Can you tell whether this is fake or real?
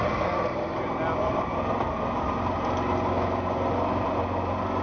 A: real